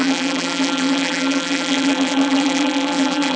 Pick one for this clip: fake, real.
fake